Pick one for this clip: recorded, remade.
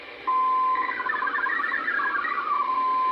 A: recorded